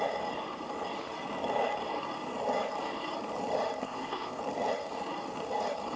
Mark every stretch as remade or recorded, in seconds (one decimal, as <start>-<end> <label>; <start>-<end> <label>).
0.0-3.8 recorded; 3.8-4.4 remade; 4.4-6.0 recorded